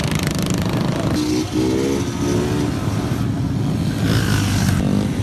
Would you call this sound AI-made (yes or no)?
no